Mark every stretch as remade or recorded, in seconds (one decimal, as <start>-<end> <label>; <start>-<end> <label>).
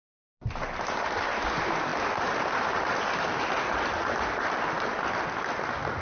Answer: 0.0-1.9 recorded; 1.9-4.5 remade; 4.5-6.0 recorded